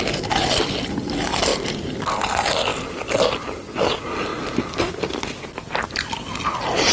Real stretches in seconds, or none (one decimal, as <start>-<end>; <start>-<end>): 0.0-2.7; 3.9-4.3; 5.2-6.9